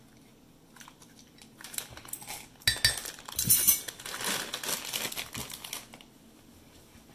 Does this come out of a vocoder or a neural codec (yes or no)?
no